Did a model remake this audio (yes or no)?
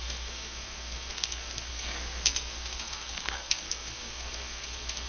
yes